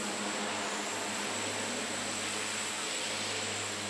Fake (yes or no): no